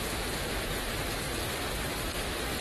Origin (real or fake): real